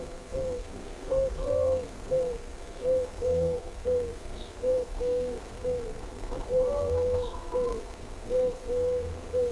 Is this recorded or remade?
remade